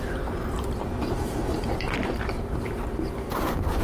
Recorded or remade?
remade